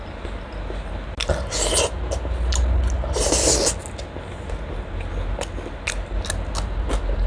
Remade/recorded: recorded